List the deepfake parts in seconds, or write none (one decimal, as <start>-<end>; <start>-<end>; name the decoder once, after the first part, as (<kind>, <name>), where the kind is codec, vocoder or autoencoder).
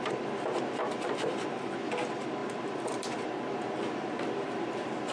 none